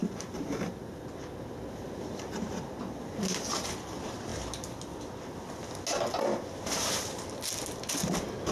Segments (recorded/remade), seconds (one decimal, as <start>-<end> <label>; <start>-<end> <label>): 0.0-8.5 recorded